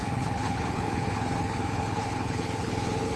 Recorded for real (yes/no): no